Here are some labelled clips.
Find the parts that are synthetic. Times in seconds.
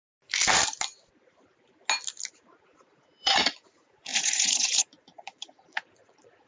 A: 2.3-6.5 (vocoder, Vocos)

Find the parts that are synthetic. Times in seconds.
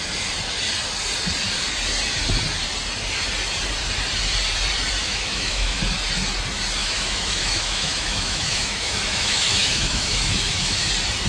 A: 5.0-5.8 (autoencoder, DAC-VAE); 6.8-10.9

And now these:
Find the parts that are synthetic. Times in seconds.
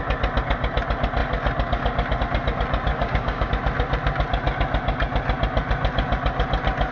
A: 2.9-3.5 (codec, DAC)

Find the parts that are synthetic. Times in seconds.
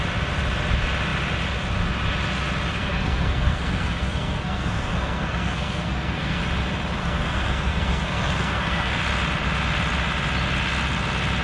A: 2.7-6.4 (codec, SNAC); 7.0-9.0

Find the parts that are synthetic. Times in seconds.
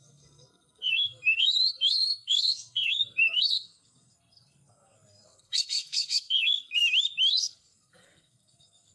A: 0.0-6.8 (codec, SNAC); 7.3-8.9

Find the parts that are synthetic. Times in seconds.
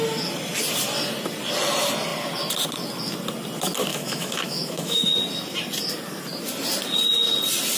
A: 3.9-5.1 (autoencoder, DAC-VAE)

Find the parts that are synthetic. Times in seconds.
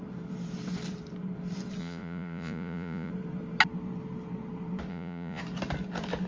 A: 1.8-3.1 (vocoder, Vocos); 4.9-5.4